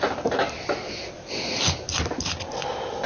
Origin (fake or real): real